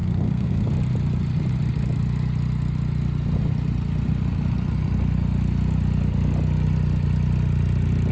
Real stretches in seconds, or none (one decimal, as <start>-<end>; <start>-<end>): 0.7-8.1